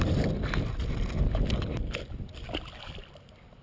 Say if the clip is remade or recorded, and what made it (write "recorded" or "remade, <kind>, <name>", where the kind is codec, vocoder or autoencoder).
recorded